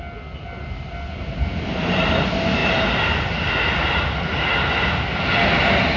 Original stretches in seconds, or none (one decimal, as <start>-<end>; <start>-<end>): 0.0-6.0